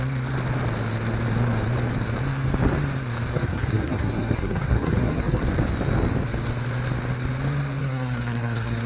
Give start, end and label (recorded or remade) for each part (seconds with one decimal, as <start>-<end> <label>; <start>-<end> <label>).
0.0-3.3 recorded; 3.3-5.4 remade; 5.4-7.8 recorded; 7.8-8.9 remade